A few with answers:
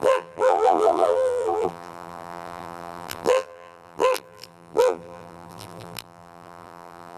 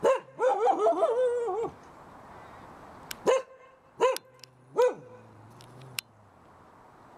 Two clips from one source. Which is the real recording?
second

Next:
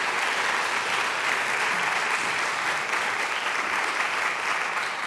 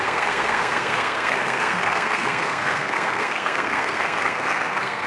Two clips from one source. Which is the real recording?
first